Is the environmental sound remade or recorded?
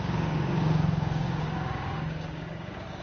remade